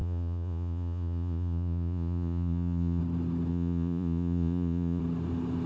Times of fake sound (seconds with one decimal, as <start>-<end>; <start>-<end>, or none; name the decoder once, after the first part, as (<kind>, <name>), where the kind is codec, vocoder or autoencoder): 0.0-3.0 (vocoder, Vocos); 3.5-5.0